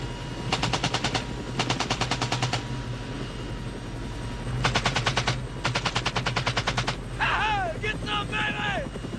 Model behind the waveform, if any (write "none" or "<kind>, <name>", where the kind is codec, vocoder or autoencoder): none